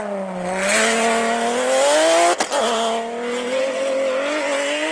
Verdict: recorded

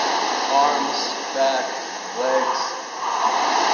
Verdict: recorded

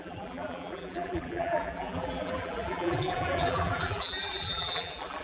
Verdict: remade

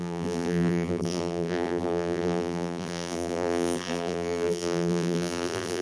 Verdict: remade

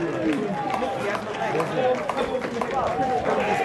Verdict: recorded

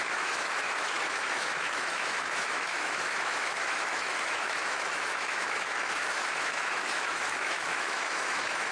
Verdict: remade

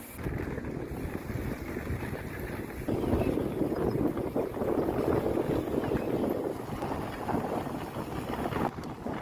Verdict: recorded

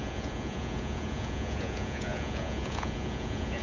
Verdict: remade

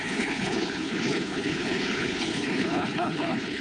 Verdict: remade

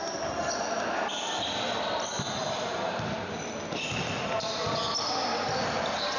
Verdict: recorded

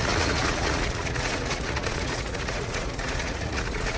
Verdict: remade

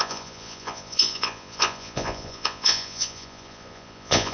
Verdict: remade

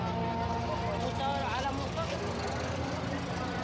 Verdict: recorded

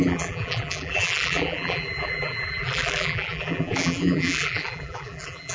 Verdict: remade